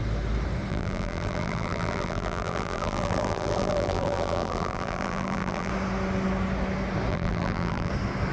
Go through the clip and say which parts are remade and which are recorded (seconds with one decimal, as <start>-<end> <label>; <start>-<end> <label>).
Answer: 0.0-0.7 recorded; 0.7-5.7 remade; 5.7-7.1 recorded; 7.1-7.9 remade; 7.9-8.3 recorded